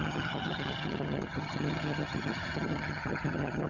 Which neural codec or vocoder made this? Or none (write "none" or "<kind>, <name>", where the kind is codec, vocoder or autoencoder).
vocoder, HiFi-GAN